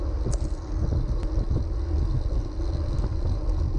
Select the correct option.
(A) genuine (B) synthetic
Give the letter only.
A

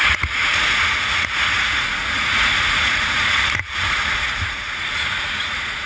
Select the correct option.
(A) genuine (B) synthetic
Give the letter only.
B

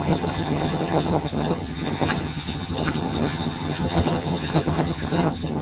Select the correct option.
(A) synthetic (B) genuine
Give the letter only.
A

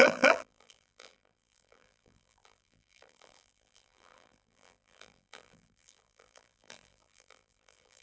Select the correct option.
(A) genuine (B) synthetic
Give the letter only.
B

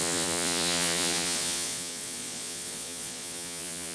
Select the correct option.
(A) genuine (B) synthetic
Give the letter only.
B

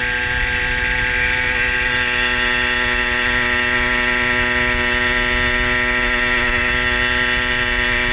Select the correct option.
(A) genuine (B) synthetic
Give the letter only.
A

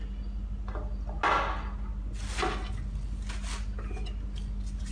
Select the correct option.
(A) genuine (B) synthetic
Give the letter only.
A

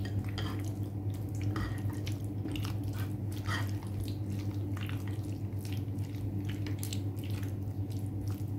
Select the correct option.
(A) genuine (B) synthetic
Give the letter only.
A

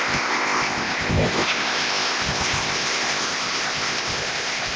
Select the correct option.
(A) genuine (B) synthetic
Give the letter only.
B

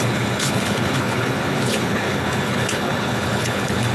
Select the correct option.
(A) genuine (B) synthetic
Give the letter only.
B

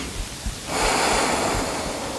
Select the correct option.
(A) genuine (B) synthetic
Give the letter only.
A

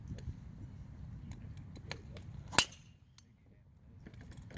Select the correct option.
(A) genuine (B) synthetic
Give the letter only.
A